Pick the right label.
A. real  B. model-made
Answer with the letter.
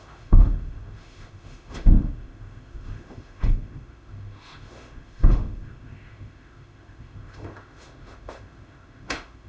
B